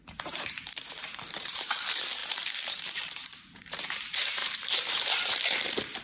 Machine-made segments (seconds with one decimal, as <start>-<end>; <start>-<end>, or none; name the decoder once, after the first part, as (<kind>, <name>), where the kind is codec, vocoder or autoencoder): 0.0-6.0 (vocoder, BigVGAN v2)